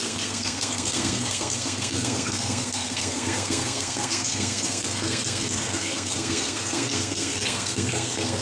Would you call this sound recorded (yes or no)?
no